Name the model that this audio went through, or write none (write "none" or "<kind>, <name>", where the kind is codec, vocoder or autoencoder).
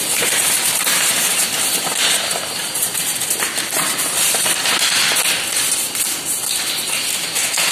none